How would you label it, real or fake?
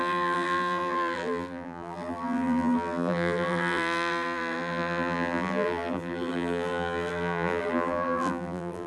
fake